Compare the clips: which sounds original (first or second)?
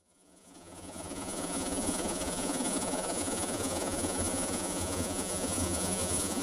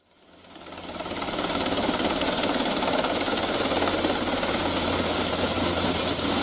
second